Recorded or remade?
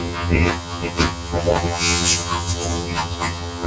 remade